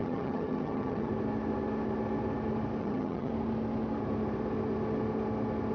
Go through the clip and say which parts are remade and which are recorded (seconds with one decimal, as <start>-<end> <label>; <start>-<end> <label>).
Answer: 0.0-1.1 remade; 1.1-2.8 recorded; 2.8-3.3 remade; 3.3-5.7 recorded